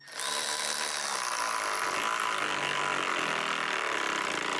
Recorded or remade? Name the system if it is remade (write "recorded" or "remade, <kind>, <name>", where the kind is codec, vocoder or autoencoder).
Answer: recorded